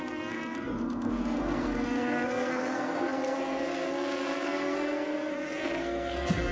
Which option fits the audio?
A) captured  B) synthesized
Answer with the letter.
B